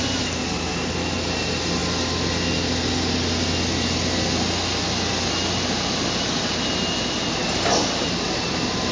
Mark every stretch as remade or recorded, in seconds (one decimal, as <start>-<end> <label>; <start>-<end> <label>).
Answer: 0.0-8.9 recorded